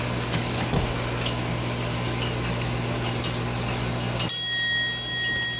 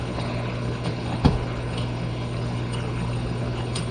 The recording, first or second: first